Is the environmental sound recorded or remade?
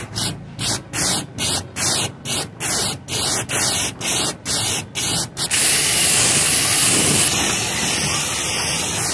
recorded